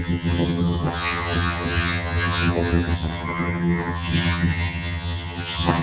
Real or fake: fake